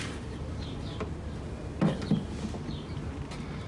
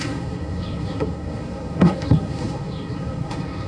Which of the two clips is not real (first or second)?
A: second